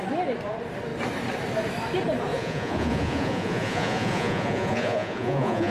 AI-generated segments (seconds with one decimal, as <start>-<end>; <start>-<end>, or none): 2.3-5.7